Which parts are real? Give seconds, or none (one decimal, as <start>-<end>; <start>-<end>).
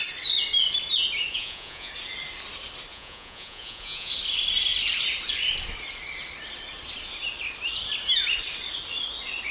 0.0-1.3; 1.9-2.9; 4.1-9.5